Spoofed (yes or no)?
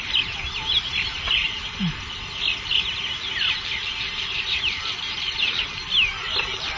no